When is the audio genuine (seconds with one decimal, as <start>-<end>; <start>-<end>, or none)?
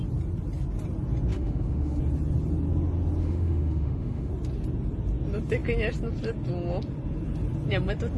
0.0-1.3; 2.0-3.2; 4.3-8.2